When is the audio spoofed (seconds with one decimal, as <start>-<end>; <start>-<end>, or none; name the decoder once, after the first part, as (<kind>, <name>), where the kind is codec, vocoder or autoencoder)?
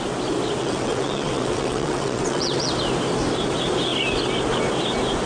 0.6-2.7 (vocoder, WaveNeXt)